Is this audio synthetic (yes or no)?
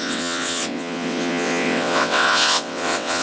yes